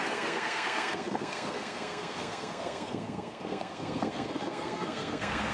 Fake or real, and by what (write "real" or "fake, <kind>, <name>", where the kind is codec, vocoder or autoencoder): fake, codec, SNAC